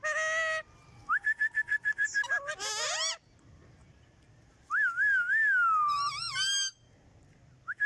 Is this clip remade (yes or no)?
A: no